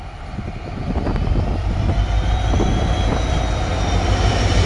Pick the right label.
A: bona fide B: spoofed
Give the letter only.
B